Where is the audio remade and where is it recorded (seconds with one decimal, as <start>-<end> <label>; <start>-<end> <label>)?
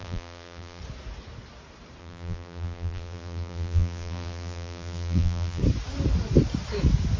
0.0-0.8 remade; 0.8-2.0 recorded; 2.0-5.6 remade; 5.6-7.2 recorded